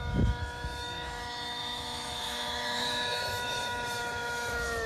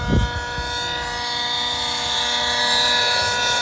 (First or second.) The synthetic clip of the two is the first